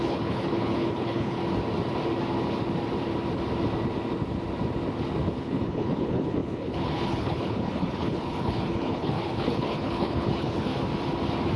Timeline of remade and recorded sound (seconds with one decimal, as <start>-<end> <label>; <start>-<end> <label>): 0.0-1.4 remade; 1.4-5.4 recorded; 5.4-10.7 remade; 10.7-11.6 recorded